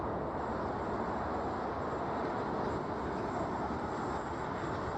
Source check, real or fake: real